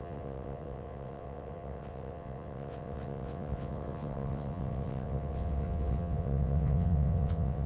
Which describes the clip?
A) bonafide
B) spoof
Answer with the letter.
B